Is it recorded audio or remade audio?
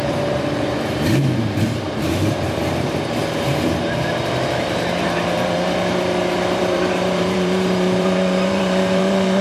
remade